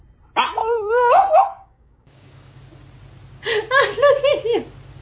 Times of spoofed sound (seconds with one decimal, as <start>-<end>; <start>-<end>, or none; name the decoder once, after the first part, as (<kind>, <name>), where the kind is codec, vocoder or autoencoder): 0.6-2.6 (codec, DAC)